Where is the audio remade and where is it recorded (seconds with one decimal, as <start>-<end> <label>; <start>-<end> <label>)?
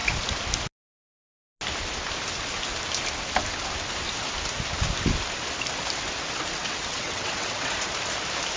0.0-6.6 recorded; 6.6-7.7 remade; 7.7-8.6 recorded